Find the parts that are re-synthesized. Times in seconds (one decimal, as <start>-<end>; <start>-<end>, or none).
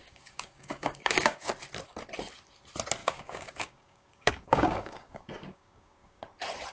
0.0-1.5; 3.0-6.2